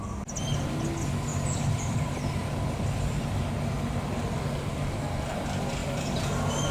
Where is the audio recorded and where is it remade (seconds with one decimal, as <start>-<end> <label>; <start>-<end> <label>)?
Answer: 0.0-1.3 recorded; 1.3-3.4 remade; 3.4-5.8 recorded; 5.8-6.7 remade